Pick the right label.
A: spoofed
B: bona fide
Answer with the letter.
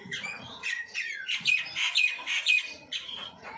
A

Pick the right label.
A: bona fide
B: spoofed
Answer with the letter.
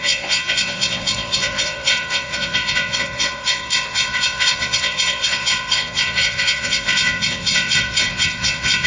B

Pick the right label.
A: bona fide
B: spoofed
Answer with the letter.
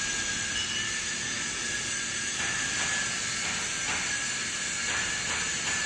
A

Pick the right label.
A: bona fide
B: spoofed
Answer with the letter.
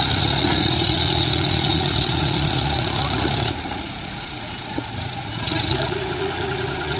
B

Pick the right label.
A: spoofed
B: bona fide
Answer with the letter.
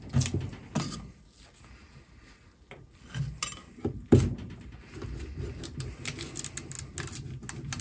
B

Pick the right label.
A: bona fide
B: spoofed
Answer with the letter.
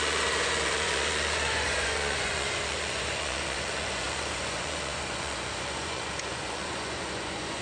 B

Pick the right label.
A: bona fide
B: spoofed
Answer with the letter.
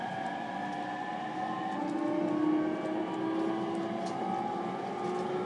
A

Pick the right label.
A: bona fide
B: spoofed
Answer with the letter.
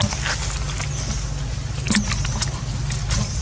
A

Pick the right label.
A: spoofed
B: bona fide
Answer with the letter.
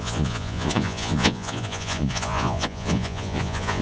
A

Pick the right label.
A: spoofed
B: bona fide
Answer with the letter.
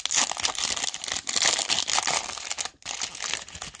B